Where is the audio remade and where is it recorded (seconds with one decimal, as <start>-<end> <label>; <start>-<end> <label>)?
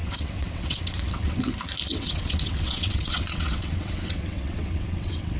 0.0-1.5 remade; 1.5-1.9 recorded; 1.9-5.4 remade